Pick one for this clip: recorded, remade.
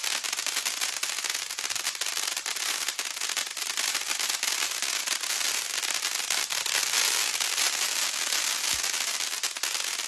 recorded